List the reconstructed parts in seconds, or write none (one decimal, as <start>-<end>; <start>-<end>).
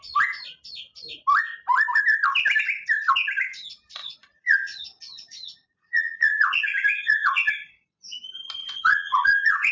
4.0-7.5; 8.6-9.7